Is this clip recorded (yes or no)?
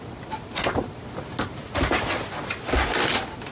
yes